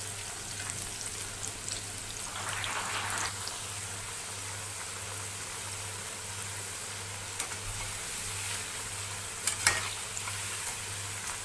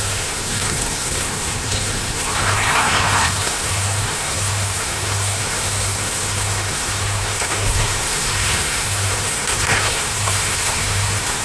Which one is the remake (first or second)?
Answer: second